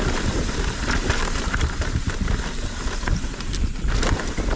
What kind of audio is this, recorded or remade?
recorded